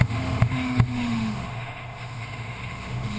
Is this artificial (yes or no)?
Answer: yes